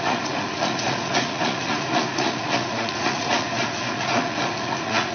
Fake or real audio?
fake